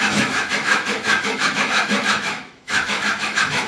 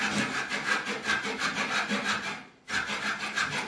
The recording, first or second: second